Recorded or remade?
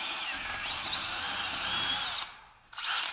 remade